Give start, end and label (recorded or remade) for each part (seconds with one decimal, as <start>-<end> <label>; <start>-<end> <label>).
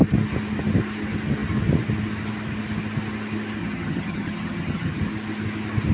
0.0-3.6 recorded; 3.6-5.0 remade; 5.0-5.9 recorded